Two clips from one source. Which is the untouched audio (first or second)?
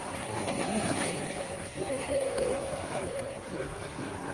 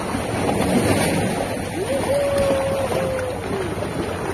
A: second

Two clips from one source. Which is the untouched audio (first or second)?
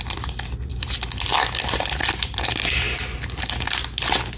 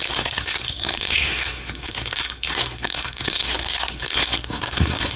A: first